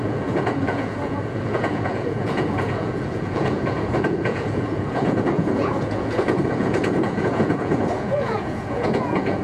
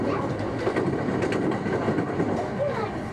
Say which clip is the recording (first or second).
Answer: second